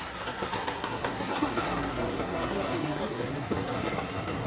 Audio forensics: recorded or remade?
remade